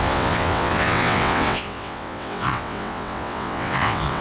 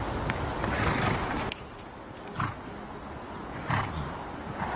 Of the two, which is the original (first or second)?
second